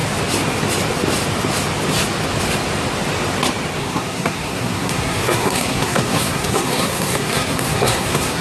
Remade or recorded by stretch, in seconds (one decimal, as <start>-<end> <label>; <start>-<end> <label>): 0.0-3.8 recorded; 3.8-8.4 remade